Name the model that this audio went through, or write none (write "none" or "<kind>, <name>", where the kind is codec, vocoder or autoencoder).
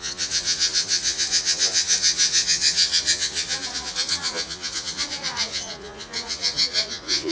vocoder, Vocos